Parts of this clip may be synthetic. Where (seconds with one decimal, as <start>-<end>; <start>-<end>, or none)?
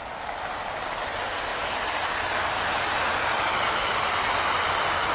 1.5-2.1